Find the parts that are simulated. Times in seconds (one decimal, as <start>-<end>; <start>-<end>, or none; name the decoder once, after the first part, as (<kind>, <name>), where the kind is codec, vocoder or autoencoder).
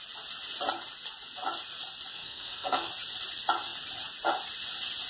2.1-2.9 (codec, SNAC)